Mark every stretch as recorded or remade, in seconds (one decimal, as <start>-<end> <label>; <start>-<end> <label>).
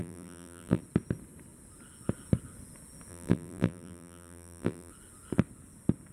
0.0-0.8 remade; 0.8-3.1 recorded; 3.1-4.9 remade; 4.9-6.1 recorded